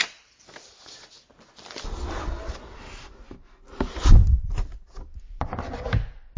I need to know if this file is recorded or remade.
recorded